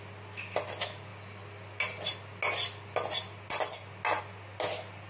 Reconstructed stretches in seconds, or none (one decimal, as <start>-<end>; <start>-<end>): none